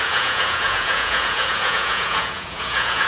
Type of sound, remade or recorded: remade